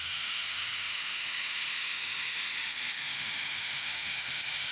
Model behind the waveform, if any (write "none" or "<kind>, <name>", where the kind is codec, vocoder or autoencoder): autoencoder, DAC-VAE